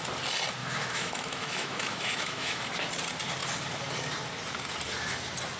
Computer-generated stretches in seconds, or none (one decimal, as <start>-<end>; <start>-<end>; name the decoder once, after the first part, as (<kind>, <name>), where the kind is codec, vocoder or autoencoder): 0.6-2.6 (autoencoder, DAC-VAE)